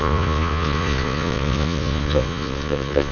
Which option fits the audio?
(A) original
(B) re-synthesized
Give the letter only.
B